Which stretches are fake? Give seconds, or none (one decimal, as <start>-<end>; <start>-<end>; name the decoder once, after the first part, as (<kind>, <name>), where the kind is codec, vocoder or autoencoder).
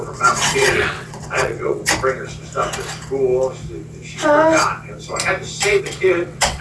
0.0-1.8 (vocoder, WaveNeXt); 5.8-6.6